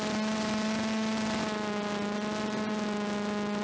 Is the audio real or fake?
real